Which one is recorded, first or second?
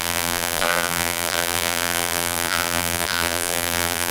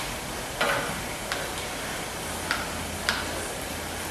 second